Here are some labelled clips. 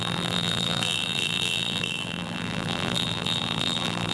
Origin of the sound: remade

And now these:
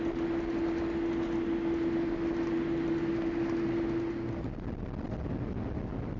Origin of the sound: recorded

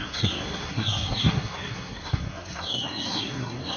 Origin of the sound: remade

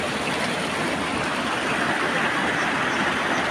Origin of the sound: recorded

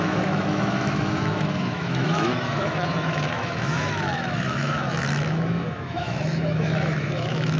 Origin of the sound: remade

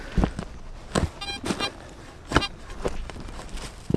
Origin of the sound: recorded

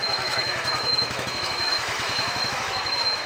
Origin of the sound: remade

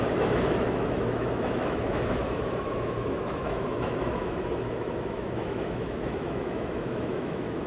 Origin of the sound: remade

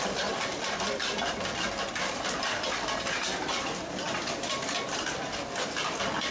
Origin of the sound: remade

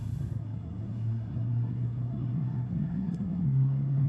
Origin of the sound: remade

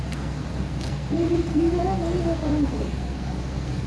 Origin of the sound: remade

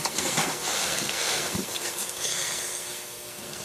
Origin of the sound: remade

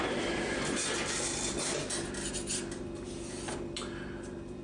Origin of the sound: recorded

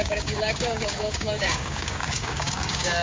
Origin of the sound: remade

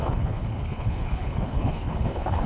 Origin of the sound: remade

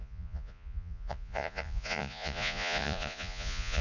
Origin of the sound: remade